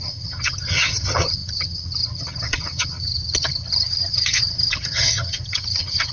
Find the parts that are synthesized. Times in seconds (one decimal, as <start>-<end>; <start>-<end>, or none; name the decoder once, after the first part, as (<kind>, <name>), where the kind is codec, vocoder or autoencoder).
0.0-6.1 (vocoder, HiFi-GAN)